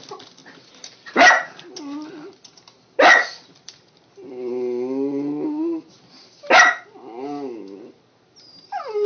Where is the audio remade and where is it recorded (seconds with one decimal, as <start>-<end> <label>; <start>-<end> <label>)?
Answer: 0.0-9.1 recorded

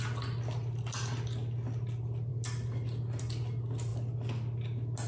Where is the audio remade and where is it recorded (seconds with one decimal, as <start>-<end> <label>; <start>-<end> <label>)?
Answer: 0.0-5.1 recorded

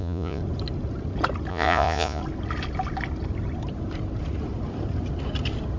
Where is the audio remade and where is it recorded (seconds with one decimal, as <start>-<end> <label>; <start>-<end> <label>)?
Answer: 0.0-0.4 remade; 0.4-1.5 recorded; 1.5-2.2 remade; 2.2-5.8 recorded

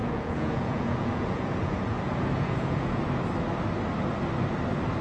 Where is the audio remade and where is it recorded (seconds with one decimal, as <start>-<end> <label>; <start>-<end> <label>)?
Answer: 0.0-3.0 remade; 3.0-5.0 recorded